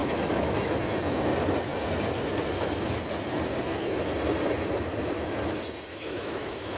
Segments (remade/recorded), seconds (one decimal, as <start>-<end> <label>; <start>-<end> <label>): 0.0-0.8 remade; 0.8-5.9 recorded; 5.9-6.8 remade